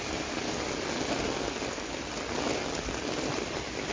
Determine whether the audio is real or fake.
real